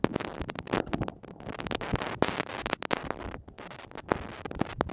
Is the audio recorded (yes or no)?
yes